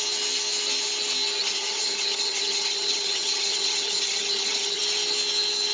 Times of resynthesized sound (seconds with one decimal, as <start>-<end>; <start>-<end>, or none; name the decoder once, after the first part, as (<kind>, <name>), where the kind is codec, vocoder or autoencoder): 1.4-4.8 (vocoder, HiFi-GAN)